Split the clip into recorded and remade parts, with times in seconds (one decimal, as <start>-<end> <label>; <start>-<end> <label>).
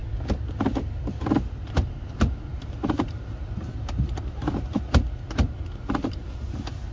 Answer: 0.0-2.5 recorded; 2.5-6.2 remade; 6.2-6.9 recorded